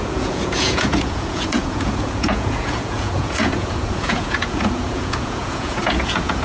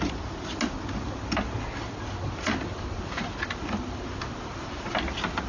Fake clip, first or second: first